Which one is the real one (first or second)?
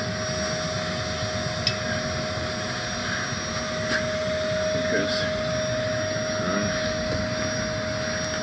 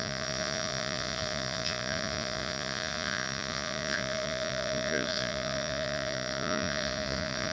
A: first